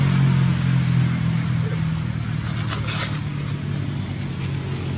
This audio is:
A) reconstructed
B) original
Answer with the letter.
B